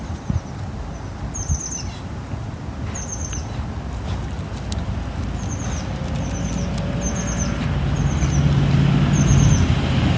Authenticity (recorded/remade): recorded